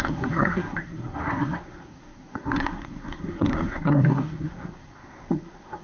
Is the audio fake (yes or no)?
yes